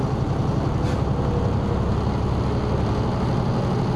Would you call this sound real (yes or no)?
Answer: yes